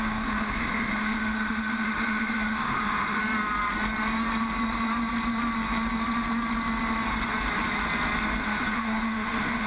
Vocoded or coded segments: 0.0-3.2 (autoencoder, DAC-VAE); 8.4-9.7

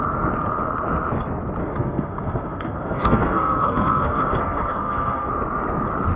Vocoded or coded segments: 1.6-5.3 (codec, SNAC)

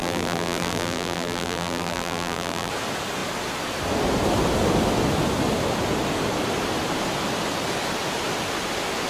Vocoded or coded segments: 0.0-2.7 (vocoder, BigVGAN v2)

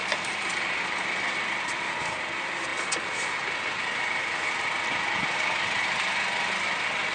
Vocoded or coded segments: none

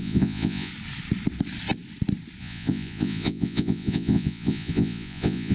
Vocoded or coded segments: 0.0-0.7 (vocoder, Vocos); 2.4-5.5

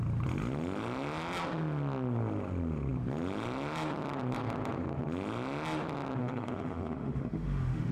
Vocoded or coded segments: 6.2-7.9 (autoencoder, DAC-VAE)